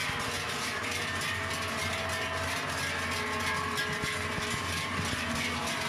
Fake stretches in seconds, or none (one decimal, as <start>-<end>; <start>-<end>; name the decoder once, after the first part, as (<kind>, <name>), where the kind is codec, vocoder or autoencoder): none